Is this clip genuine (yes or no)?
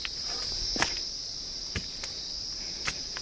yes